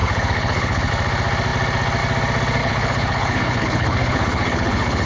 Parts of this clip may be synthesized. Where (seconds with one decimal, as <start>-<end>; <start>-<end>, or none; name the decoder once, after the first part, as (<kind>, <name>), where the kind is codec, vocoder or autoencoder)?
0.0-0.9 (codec, HILCodec); 2.6-5.1